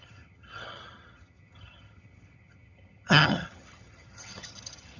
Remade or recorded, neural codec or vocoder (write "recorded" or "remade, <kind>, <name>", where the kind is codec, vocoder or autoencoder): remade, vocoder, HiFi-GAN